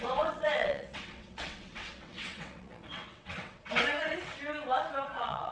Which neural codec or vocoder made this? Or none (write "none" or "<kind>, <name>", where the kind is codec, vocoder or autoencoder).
vocoder, WaveNeXt